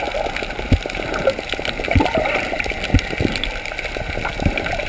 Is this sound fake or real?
real